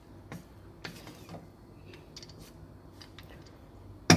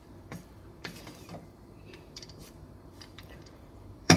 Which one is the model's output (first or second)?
second